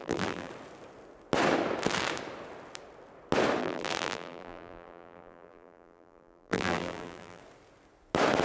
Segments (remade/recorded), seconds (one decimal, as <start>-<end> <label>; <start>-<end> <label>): 0.0-0.5 remade; 0.5-3.6 recorded; 3.6-7.4 remade; 7.4-8.4 recorded